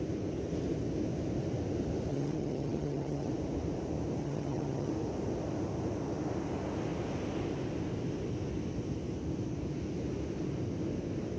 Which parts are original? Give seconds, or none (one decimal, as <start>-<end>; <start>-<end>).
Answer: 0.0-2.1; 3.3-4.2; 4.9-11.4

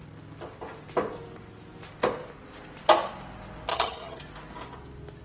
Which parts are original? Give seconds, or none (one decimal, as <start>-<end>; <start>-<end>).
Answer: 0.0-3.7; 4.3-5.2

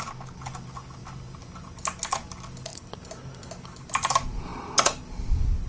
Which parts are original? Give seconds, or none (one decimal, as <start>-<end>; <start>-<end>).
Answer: 0.0-5.7